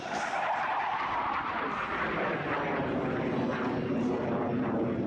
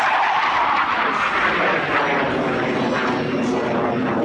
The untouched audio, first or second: second